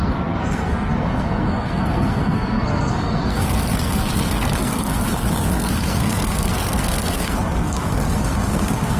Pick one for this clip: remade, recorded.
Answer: remade